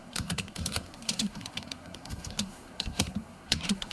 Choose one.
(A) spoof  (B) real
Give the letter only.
A